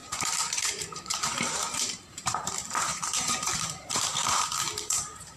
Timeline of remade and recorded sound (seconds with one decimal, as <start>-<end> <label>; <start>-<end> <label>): 0.0-2.5 remade; 2.5-2.9 recorded; 2.9-5.4 remade